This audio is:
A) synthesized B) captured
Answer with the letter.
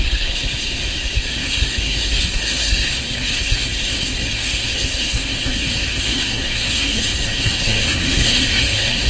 A